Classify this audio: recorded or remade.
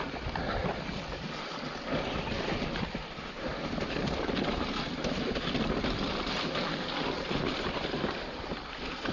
recorded